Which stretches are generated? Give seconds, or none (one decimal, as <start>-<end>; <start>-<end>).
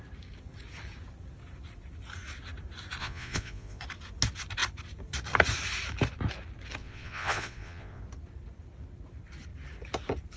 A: 3.0-3.8; 6.8-8.0